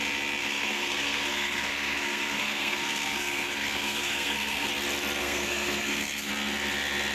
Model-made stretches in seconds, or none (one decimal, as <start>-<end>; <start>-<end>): 0.4-4.7; 5.2-6.3